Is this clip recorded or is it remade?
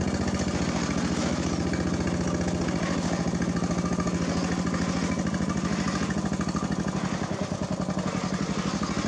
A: recorded